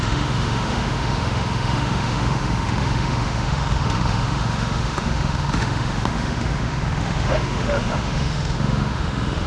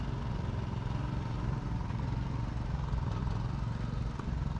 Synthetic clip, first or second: first